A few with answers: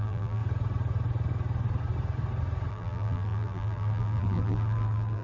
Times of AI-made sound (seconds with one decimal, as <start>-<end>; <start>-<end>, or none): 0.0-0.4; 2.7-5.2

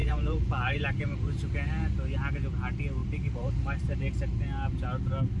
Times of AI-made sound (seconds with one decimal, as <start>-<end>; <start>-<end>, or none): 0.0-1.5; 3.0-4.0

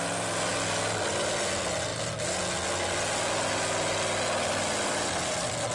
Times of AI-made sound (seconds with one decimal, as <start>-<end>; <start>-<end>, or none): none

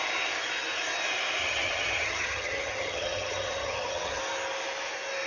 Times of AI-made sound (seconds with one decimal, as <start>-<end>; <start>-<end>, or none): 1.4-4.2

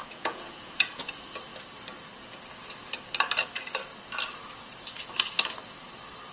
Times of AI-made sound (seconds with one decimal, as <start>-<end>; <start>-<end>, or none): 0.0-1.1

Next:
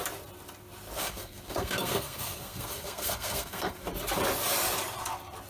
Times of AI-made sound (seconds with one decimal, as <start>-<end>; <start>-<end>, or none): 1.0-3.8

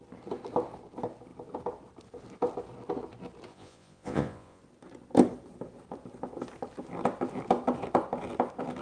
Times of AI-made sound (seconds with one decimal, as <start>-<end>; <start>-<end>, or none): 3.5-4.6

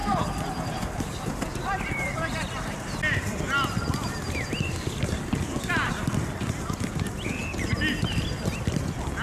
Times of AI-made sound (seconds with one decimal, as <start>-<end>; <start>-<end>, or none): 0.0-9.2